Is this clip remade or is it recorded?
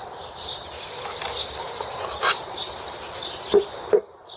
recorded